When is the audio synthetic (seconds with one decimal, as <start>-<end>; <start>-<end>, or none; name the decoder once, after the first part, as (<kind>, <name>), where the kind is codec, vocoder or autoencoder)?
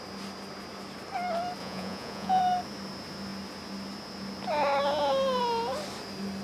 1.6-2.4 (vocoder, Vocos)